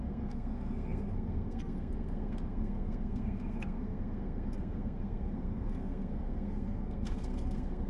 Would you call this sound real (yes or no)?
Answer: no